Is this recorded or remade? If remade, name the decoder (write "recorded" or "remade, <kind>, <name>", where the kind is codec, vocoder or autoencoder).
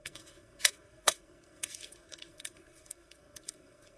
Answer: remade, codec, SNAC